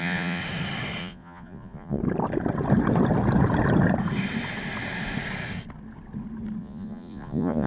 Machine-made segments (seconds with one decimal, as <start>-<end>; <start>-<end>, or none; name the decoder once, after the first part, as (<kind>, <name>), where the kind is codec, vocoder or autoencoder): 0.0-0.4 (vocoder, Vocos); 1.0-2.0; 6.6-7.7